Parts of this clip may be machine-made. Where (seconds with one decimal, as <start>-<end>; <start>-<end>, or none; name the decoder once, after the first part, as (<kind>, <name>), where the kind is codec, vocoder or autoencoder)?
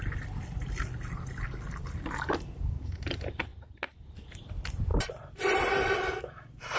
4.9-6.1 (vocoder, BigVGAN v2)